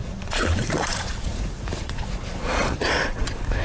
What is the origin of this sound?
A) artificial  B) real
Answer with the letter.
A